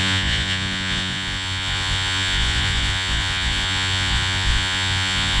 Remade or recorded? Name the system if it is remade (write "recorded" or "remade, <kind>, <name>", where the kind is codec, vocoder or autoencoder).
remade, vocoder, Vocos